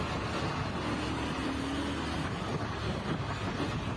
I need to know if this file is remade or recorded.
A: recorded